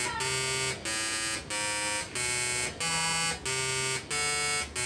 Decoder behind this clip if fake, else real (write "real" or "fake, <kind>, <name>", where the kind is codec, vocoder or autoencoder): real